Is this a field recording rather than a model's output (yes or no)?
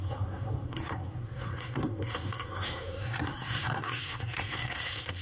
no